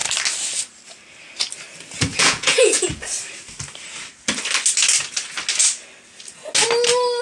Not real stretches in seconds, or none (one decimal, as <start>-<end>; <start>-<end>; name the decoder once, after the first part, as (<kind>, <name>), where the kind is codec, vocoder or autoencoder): 2.1-2.9 (vocoder, Vocos)

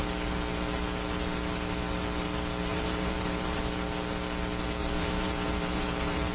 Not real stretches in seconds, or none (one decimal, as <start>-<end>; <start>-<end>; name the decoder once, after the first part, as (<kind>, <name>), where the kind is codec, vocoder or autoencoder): 2.7-3.6 (vocoder, BigVGAN v2); 4.8-6.3

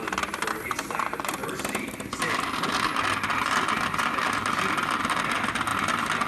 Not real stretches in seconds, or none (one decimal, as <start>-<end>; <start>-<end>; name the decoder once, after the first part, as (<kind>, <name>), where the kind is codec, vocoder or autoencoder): none

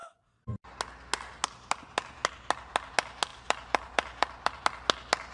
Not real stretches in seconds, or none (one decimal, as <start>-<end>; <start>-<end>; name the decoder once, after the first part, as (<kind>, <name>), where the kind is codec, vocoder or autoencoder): 0.0-0.6 (vocoder, BigVGAN v2); 3.3-4.6